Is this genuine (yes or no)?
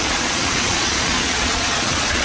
no